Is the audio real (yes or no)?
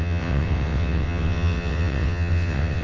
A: no